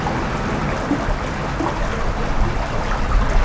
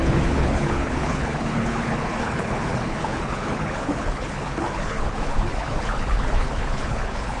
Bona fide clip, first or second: first